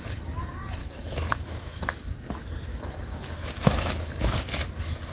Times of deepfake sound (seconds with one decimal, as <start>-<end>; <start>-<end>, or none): 0.8-1.8; 2.7-4.4